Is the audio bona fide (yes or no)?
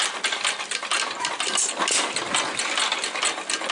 yes